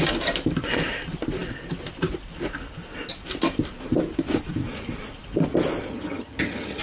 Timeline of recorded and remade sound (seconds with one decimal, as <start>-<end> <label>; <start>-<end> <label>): 0.0-5.9 recorded; 5.9-6.8 remade